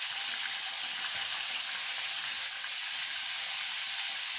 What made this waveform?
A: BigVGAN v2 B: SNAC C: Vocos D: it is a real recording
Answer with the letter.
D